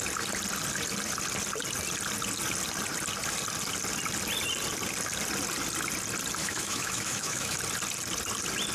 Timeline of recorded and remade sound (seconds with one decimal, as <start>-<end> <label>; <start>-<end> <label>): 0.0-6.4 recorded; 6.4-7.6 remade; 7.6-8.7 recorded